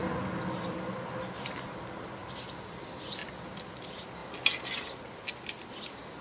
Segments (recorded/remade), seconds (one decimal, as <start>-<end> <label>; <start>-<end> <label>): 0.0-6.2 recorded